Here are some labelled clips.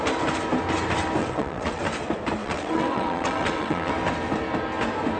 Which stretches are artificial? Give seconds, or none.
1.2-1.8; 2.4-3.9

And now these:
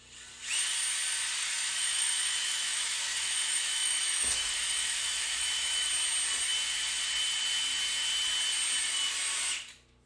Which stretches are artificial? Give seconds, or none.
1.4-5.9

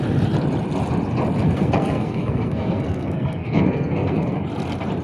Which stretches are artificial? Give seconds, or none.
1.4-4.4

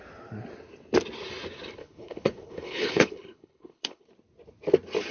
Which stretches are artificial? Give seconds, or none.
1.8-4.0

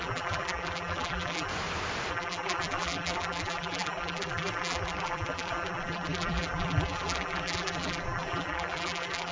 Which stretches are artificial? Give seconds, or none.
0.0-1.5; 2.1-9.3

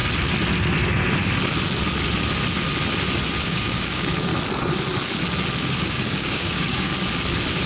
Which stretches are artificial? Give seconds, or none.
3.3-4.3; 5.6-6.9

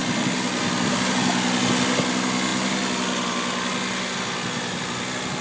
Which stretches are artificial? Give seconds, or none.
none

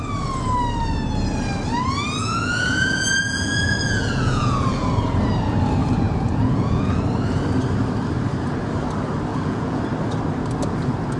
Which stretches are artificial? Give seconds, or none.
2.2-4.9; 5.8-7.0; 9.3-9.8